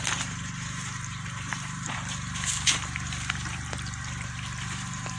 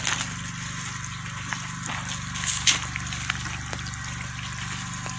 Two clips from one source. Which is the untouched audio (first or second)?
second